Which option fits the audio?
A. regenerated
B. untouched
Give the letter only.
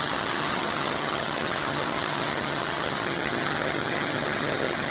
A